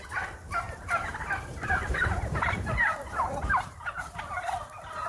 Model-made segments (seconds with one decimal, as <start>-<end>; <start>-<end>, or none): 1.1-4.2